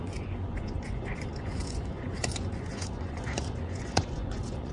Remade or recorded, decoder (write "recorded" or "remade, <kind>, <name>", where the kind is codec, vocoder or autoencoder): remade, vocoder, Vocos